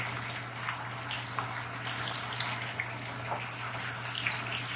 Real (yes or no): yes